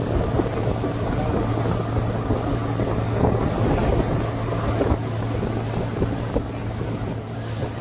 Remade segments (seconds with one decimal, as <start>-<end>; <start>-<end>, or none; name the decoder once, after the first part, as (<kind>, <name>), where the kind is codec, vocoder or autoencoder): none